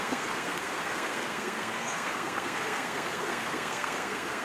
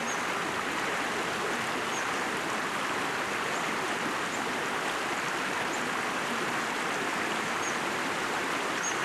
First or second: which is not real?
first